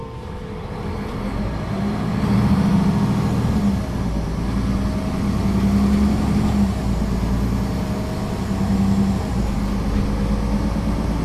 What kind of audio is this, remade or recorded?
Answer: recorded